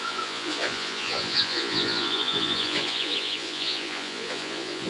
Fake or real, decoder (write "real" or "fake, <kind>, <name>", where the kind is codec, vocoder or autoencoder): fake, vocoder, Vocos